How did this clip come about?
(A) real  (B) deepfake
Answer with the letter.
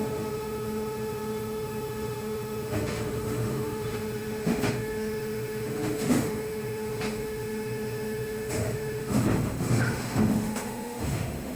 B